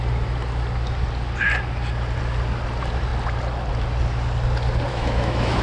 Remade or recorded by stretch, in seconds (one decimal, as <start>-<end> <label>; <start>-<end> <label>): 0.0-4.9 recorded; 4.9-5.6 remade